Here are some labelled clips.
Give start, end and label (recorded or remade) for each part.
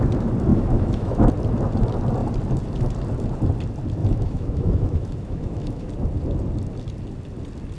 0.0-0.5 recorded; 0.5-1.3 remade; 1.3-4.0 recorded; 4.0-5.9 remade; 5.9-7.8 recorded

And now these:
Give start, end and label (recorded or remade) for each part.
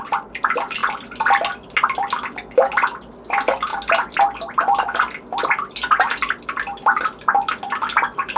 0.0-8.4 recorded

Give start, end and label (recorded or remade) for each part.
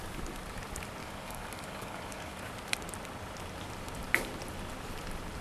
0.0-1.0 recorded; 1.0-2.4 remade; 2.4-5.4 recorded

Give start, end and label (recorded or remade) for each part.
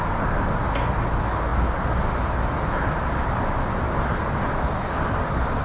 0.0-5.6 recorded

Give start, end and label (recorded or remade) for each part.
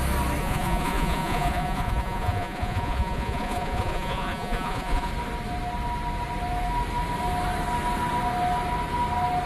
0.0-0.4 recorded; 0.4-5.1 remade; 5.1-9.5 recorded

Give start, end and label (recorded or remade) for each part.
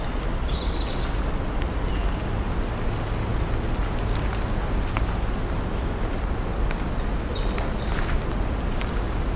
0.0-9.4 recorded